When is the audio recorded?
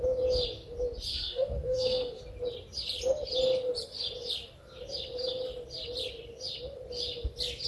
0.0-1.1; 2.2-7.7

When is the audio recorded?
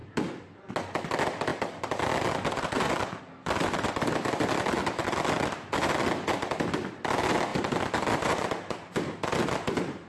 0.0-1.5; 3.2-7.5; 9.3-10.1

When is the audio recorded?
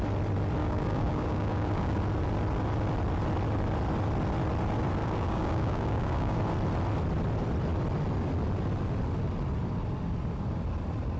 0.0-0.6; 2.0-5.0; 6.4-11.2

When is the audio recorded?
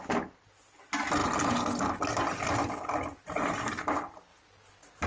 0.0-5.1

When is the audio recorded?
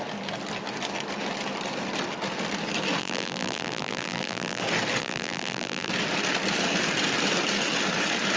0.0-3.0; 4.6-5.0; 5.9-8.4